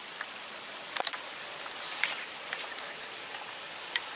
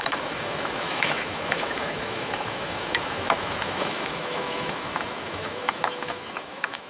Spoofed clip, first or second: second